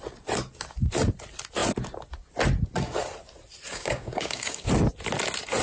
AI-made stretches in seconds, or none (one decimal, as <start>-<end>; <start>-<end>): 3.7-4.7